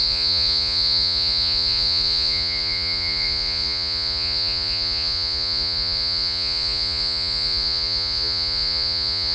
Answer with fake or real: fake